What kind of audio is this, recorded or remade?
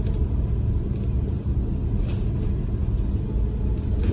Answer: recorded